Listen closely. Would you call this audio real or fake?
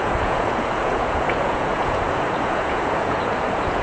fake